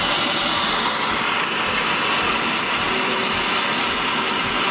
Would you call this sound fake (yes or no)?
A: no